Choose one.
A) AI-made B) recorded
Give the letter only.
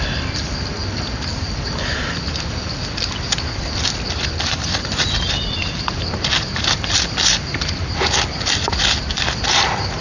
B